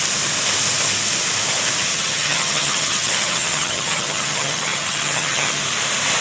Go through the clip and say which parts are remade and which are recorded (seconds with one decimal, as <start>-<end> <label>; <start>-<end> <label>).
0.0-1.9 recorded; 1.9-5.6 remade; 5.6-6.2 recorded

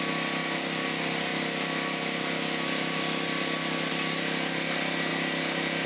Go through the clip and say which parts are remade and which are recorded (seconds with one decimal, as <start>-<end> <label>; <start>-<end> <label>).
0.0-5.9 recorded

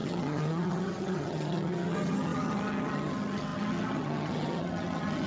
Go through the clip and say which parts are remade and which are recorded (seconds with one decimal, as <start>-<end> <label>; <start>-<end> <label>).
0.0-5.3 remade

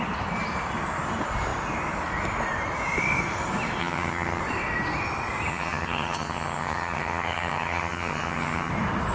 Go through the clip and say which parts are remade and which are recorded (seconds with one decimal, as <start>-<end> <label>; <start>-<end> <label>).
0.0-3.8 recorded; 3.8-4.4 remade; 4.4-5.5 recorded; 5.5-8.7 remade; 8.7-9.1 recorded

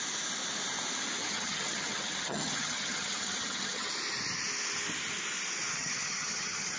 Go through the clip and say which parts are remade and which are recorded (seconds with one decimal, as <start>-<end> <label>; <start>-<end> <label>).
0.0-1.2 recorded; 1.2-3.9 remade; 3.9-5.7 recorded; 5.7-6.8 remade